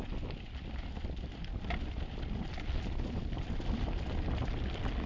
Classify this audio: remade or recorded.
recorded